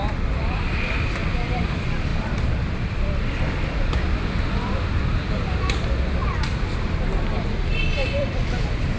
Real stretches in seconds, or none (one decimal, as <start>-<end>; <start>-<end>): 6.2-7.9